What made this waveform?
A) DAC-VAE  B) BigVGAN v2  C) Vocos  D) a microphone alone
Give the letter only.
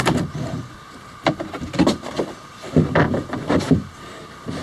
D